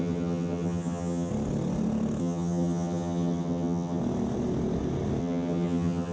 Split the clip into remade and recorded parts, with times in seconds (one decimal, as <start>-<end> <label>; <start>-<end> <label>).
0.0-1.3 remade; 1.3-2.2 recorded; 2.2-4.0 remade; 4.0-5.2 recorded; 5.2-6.1 remade